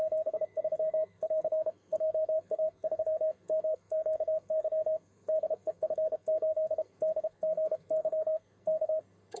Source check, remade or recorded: remade